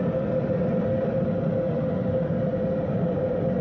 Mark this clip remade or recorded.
recorded